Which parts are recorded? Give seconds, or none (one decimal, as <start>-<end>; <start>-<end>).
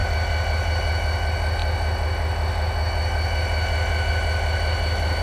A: 0.0-5.2